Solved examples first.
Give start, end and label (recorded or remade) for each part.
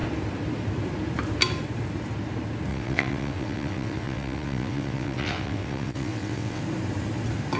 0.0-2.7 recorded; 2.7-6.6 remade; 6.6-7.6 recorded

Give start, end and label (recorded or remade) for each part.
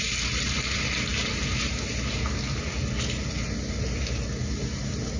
0.0-5.2 recorded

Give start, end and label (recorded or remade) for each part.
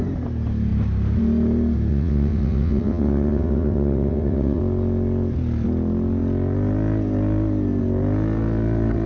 0.0-1.9 recorded; 1.9-4.6 remade; 4.6-9.1 recorded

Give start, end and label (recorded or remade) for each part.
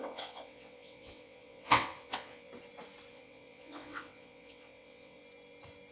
0.0-2.5 remade; 2.5-3.1 recorded; 3.1-5.2 remade; 5.2-5.9 recorded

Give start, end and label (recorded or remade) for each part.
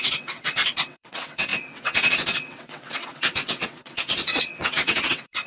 0.0-5.5 remade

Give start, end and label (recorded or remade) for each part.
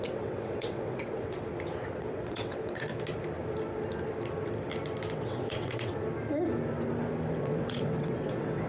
0.0-1.5 remade; 1.5-2.0 recorded; 2.0-2.9 remade; 2.9-5.1 recorded; 5.1-5.9 remade; 5.9-7.4 recorded; 7.4-8.7 remade